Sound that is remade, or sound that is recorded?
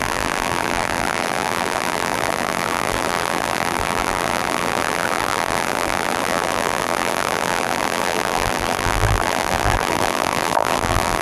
remade